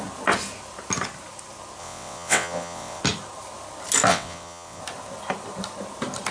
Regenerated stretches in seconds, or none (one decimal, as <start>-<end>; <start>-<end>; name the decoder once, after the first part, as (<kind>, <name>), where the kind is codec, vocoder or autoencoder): 1.8-3.0 (vocoder, WaveNeXt); 4.1-4.8